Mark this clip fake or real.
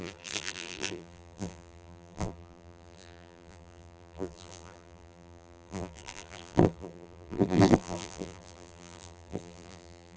fake